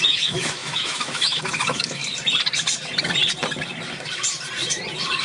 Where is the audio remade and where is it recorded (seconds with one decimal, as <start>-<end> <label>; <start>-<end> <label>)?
0.0-2.0 remade; 2.0-5.2 recorded